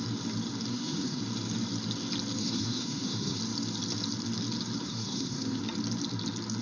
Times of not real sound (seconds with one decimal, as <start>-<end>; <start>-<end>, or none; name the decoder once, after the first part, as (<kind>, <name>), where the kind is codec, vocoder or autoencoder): 0.7-1.2 (codec, SNAC); 2.4-3.4; 4.8-5.6

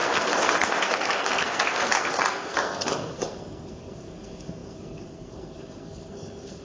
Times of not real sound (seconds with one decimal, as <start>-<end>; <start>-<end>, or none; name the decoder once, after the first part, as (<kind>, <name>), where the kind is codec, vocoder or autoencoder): 0.0-6.6 (codec, SNAC)

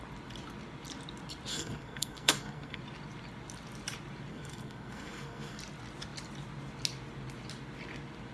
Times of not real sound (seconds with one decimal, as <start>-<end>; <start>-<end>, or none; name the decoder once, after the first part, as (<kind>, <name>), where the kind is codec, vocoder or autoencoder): 1.5-2.8 (codec, SNAC); 4.3-5.6

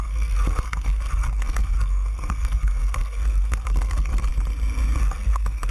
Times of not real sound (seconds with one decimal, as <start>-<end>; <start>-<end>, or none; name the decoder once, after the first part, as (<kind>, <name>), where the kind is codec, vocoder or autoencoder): 0.0-4.3 (codec, SNAC); 5.0-5.7

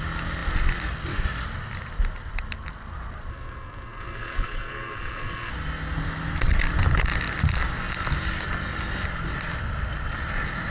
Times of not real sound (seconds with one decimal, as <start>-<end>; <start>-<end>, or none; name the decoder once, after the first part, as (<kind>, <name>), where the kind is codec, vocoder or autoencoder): 3.3-5.5 (codec, SNAC)

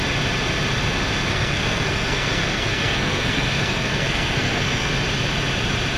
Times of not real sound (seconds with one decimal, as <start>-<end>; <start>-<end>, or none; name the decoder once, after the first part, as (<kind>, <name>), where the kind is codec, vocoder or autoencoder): 1.3-4.9 (codec, SNAC)